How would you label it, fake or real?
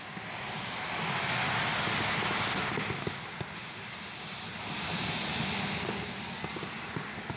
real